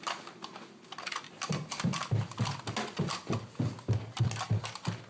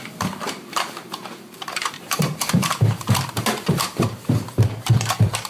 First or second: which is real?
first